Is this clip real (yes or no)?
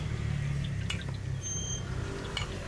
yes